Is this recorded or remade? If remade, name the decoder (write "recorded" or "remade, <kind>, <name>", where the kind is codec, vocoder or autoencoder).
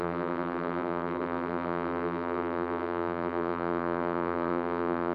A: remade, vocoder, BigVGAN v2